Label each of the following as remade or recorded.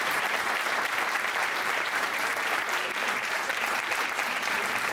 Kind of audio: remade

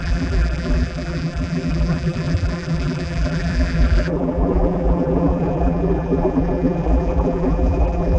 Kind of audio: remade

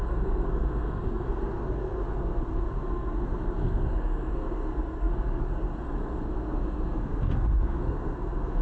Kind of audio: remade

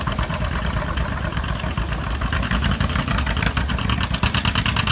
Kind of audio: recorded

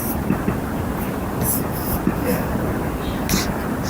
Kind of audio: recorded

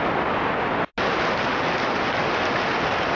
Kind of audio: recorded